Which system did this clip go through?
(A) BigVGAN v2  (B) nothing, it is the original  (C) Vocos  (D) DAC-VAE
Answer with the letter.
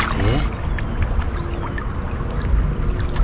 B